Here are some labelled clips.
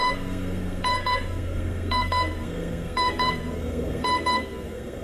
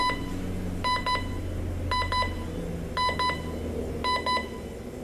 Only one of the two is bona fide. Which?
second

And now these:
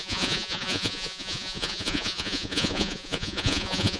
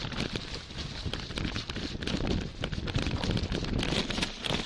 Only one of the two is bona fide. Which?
second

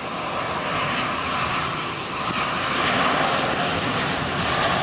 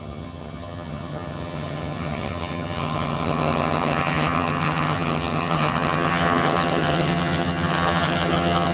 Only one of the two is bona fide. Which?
first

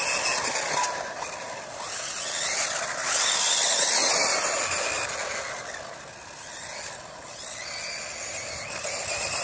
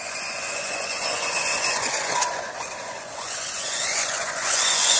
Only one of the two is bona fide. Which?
first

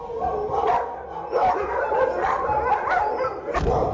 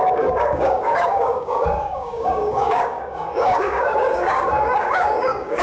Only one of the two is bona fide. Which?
first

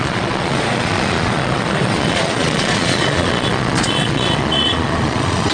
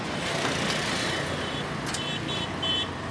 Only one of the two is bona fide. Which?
second